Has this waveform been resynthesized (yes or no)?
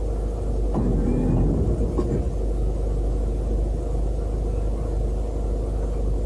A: no